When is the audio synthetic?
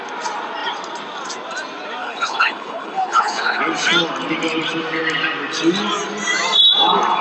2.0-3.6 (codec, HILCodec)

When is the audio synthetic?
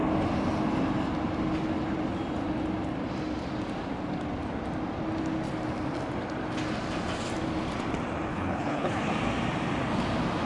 8.3-9.1 (codec, HILCodec)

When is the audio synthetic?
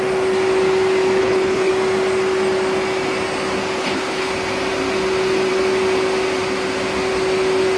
1.2-1.7 (codec, HILCodec); 3.8-4.3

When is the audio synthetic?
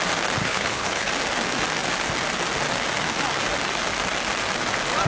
0.4-1.1 (codec, HILCodec)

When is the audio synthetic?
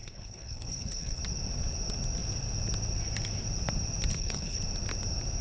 0.0-1.2 (codec, HILCodec); 4.1-4.6